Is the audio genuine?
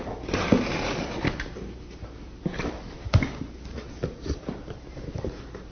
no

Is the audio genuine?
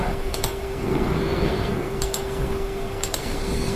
no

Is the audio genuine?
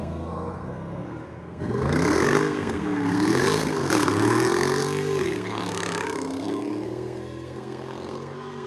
no